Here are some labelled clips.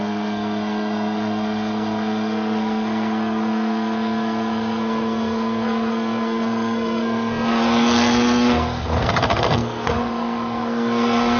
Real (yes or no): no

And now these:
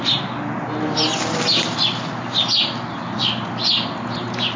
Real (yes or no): yes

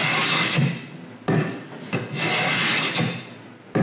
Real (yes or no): yes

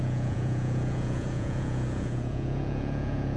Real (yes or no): no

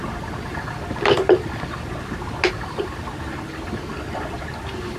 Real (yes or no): yes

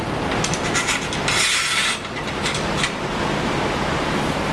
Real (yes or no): yes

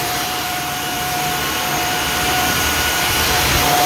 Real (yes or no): no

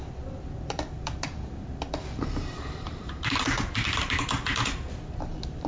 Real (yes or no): no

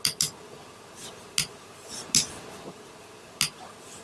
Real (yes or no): yes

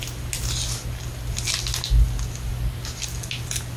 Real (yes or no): yes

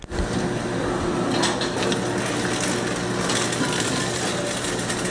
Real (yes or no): yes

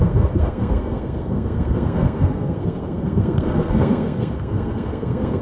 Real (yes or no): no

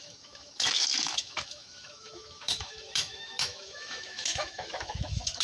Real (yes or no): no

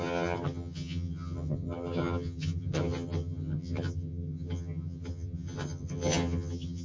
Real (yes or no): no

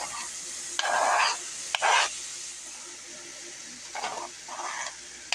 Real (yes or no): yes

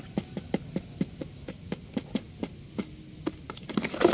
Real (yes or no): yes